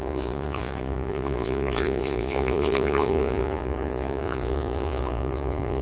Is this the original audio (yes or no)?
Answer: no